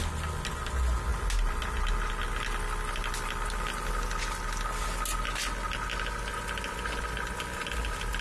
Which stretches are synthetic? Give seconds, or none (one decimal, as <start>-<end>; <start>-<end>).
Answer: none